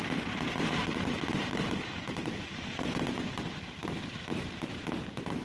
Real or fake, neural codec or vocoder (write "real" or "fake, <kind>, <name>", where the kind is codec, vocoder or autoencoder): fake, vocoder, BigVGAN v2